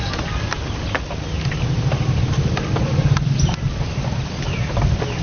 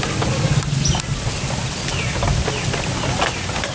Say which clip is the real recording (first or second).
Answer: second